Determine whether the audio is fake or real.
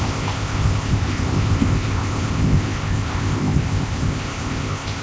fake